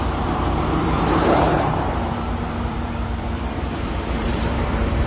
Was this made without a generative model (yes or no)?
no